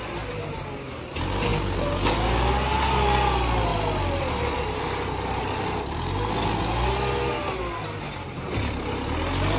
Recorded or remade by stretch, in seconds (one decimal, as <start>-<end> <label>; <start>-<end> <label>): 0.0-3.7 recorded; 3.7-4.8 remade; 4.8-9.6 recorded